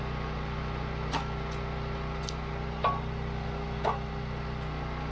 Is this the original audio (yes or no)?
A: yes